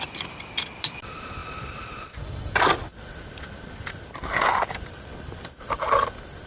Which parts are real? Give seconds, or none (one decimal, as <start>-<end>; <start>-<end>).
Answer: 0.0-6.5